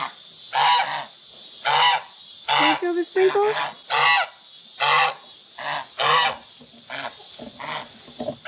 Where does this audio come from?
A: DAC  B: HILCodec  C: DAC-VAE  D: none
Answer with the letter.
D